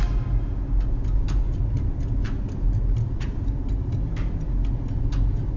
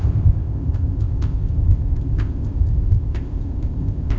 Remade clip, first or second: second